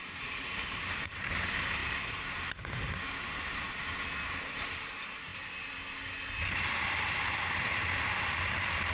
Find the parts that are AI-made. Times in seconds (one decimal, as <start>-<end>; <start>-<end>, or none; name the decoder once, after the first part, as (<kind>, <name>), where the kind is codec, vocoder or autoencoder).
none